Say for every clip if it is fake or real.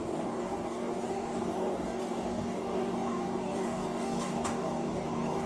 fake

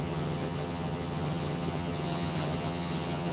fake